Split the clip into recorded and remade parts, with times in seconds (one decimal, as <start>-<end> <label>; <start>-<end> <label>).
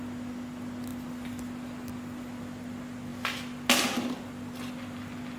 0.0-5.4 recorded